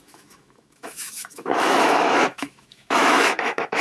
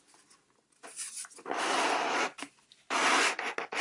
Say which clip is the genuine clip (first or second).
second